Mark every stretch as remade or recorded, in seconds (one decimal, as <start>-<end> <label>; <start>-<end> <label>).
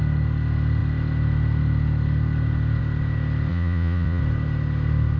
0.0-3.5 recorded; 3.5-4.2 remade; 4.2-5.2 recorded